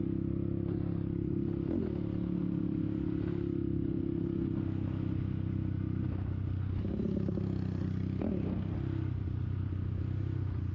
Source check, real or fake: real